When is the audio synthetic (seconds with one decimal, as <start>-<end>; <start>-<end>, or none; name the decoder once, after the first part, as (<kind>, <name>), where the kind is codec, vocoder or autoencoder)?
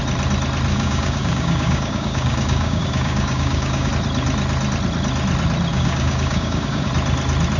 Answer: 0.7-3.9 (codec, DAC); 5.7-6.9